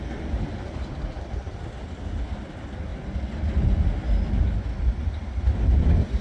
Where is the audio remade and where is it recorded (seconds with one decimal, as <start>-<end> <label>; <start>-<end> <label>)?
0.0-6.2 recorded